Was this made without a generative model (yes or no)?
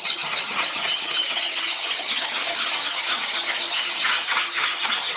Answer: no